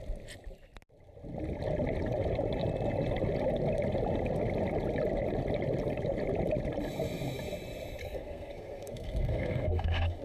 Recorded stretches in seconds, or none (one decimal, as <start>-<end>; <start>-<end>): 0.0-8.0